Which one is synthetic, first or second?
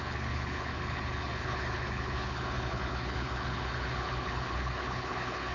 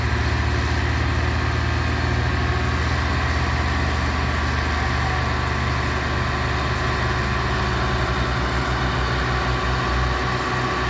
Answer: first